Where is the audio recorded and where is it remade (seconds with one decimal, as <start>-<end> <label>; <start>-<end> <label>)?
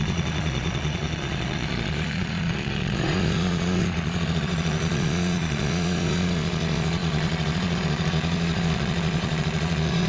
0.0-10.1 remade